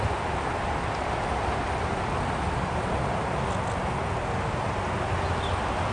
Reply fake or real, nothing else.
real